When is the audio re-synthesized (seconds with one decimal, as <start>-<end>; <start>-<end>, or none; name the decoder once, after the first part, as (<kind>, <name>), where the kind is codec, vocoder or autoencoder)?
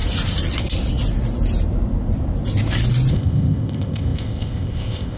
3.1-5.2 (codec, ZipCodec)